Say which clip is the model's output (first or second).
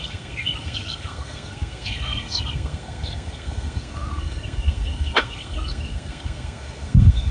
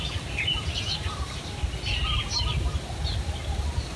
first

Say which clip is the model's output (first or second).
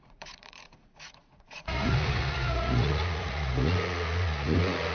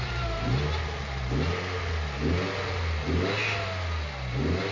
first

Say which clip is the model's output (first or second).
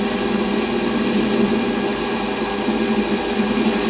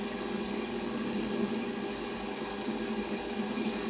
second